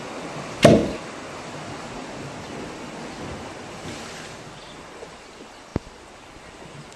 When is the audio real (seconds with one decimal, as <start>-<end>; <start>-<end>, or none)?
0.0-7.0

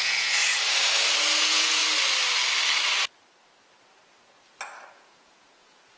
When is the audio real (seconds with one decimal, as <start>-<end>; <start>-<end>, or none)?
0.4-1.4; 1.8-4.9

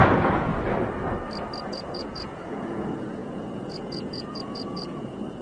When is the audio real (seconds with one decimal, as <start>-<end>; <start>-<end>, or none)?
0.5-1.6

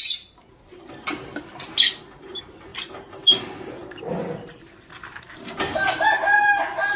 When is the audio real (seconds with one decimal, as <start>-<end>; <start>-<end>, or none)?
0.0-7.0

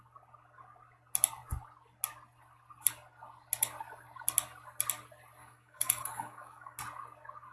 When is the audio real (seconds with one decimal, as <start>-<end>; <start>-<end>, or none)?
0.0-5.4; 6.8-7.5

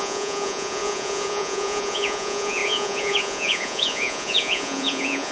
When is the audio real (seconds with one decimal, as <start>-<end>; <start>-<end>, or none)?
none

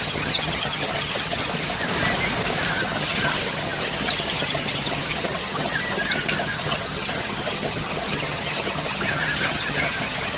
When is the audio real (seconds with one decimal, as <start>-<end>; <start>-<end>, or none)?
1.4-2.7

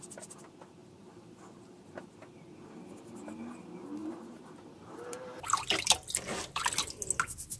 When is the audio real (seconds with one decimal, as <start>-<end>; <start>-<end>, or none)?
0.0-0.8; 1.6-4.0; 6.6-7.6